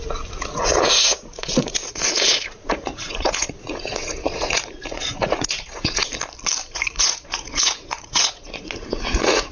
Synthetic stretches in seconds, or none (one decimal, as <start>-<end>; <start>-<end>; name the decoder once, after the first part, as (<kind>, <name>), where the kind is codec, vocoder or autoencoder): 0.0-6.0 (vocoder, Vocos); 6.7-9.5